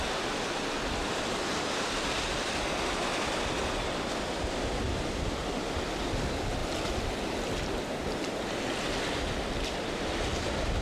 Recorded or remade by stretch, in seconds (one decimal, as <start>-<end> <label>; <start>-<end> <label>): 0.0-10.8 recorded